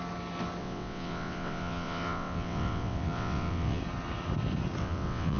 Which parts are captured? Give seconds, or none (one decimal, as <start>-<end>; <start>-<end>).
0.0-0.6; 3.8-4.8